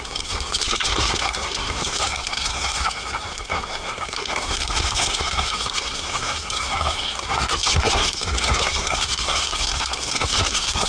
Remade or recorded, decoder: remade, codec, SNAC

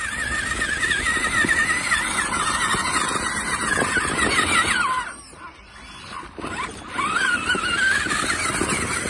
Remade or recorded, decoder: recorded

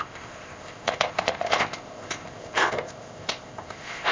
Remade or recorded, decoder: remade, codec, ZipCodec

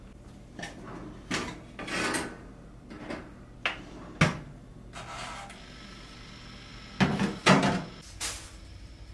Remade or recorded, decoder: recorded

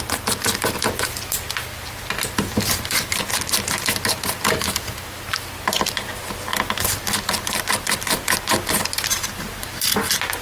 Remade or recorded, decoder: recorded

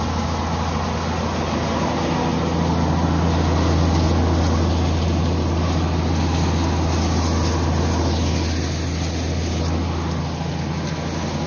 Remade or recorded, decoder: recorded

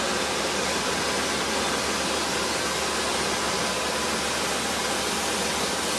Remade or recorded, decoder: recorded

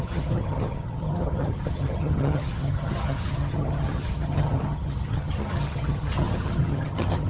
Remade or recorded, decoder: remade, vocoder, HiFi-GAN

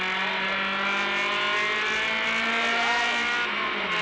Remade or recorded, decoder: recorded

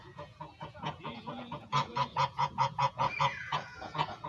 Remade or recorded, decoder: remade, vocoder, Vocos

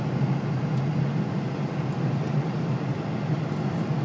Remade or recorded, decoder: recorded